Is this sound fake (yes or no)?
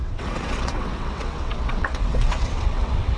yes